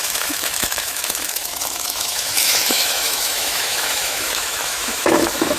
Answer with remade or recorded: remade